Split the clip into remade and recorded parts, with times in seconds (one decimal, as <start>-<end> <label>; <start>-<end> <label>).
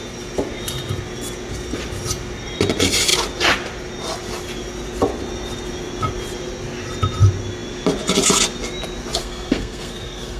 0.0-9.2 recorded; 9.2-10.4 remade